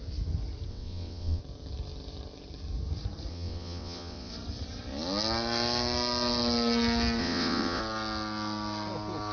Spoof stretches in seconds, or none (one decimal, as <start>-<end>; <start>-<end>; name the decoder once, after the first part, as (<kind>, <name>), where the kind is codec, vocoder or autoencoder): 0.7-1.4 (vocoder, WaveNeXt); 3.3-4.3; 7.2-7.8